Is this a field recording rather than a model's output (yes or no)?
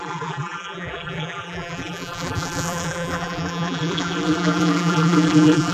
no